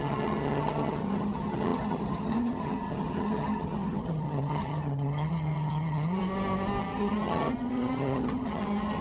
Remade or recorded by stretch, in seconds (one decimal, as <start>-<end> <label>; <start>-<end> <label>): 0.0-6.2 remade; 6.2-6.8 recorded; 6.8-9.0 remade